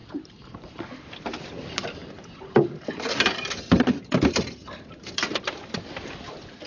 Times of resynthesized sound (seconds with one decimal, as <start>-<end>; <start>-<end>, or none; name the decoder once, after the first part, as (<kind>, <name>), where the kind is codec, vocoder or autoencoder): 2.0-5.8 (vocoder, BigVGAN v2)